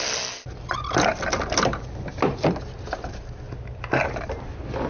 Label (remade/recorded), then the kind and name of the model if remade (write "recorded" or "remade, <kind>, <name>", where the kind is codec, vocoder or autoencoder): recorded